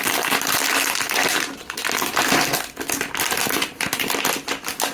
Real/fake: real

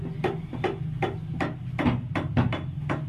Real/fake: real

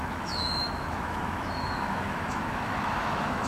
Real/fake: fake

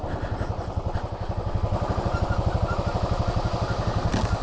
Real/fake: real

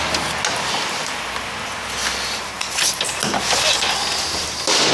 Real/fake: real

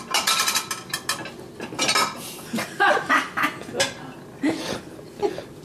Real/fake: real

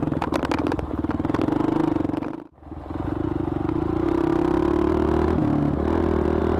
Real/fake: real